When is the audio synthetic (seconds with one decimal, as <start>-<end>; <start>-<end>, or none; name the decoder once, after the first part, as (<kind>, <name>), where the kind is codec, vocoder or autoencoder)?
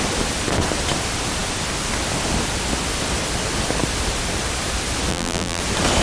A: 5.1-5.6 (vocoder, BigVGAN v2)